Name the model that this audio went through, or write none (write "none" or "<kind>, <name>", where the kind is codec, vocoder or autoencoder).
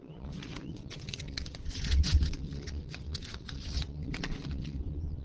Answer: vocoder, WaveNeXt